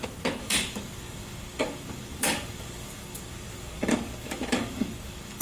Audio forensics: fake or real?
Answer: fake